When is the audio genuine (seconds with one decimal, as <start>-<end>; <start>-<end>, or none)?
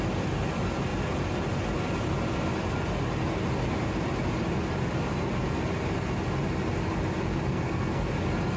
0.0-7.5; 8.1-8.6